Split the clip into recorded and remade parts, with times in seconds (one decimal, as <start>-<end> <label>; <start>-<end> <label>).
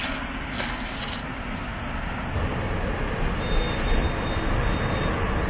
0.0-5.5 recorded